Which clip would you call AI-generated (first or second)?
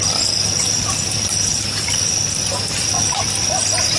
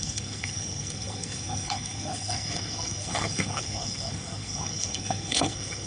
second